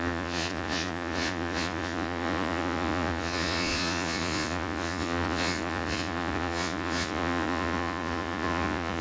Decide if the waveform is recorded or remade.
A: remade